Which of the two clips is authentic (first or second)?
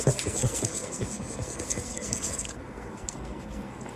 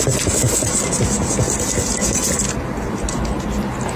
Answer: second